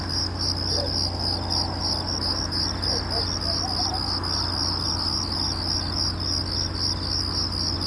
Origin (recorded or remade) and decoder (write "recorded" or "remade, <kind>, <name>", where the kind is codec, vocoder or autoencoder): recorded